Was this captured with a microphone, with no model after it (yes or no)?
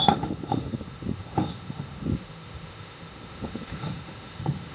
no